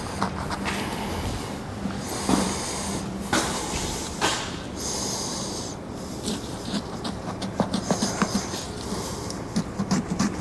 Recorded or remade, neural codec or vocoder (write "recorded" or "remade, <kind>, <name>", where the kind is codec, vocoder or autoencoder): remade, vocoder, BigVGAN v2